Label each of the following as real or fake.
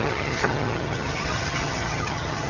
fake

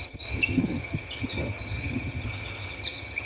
fake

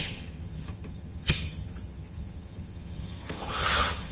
fake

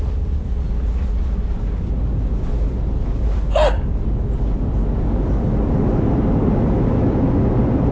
real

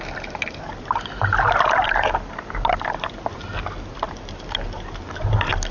real